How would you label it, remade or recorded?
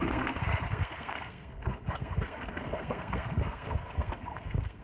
remade